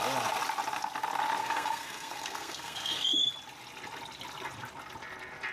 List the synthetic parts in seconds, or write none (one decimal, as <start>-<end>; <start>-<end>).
1.4-3.3